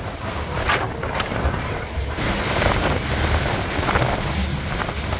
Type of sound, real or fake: fake